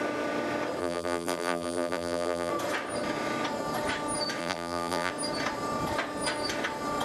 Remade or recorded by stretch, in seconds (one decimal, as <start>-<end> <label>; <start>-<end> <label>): 0.0-0.8 recorded; 0.8-2.5 remade; 2.5-4.4 recorded; 4.4-5.1 remade; 5.1-7.0 recorded